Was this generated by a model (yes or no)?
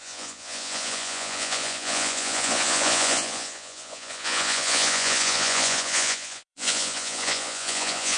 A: yes